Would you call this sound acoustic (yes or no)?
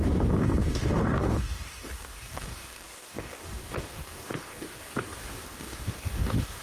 no